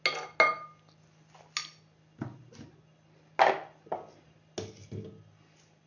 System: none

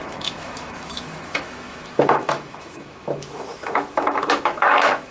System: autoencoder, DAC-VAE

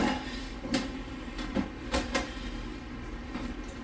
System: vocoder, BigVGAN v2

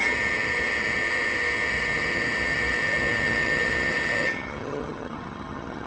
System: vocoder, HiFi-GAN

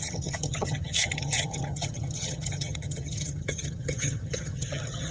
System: vocoder, HiFi-GAN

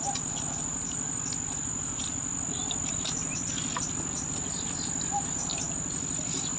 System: none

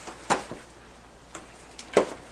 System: none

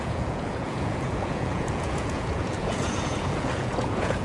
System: vocoder, Vocos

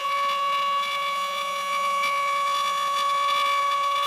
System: vocoder, Vocos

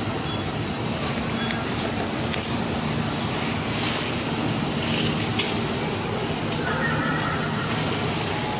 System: none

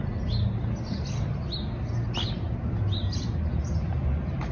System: none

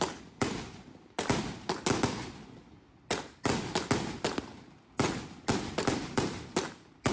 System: none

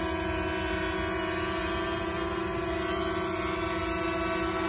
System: none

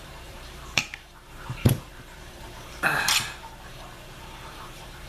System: vocoder, BigVGAN v2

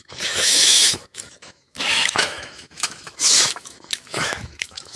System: autoencoder, DAC-VAE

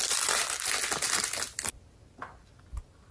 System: none